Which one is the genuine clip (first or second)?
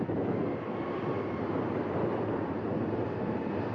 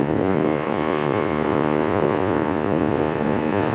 first